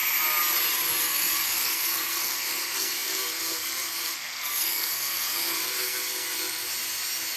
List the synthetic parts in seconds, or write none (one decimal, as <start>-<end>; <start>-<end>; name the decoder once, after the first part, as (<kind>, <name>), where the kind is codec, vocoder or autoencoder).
1.0-6.7 (codec, SNAC)